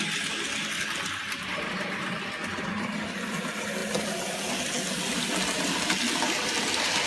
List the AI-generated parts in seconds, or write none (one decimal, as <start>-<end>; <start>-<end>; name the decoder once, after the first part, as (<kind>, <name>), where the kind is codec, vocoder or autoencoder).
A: none